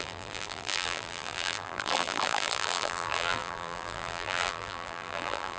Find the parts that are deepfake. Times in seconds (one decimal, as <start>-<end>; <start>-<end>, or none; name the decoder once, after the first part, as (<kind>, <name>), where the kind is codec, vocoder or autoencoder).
0.0-5.6 (vocoder, BigVGAN v2)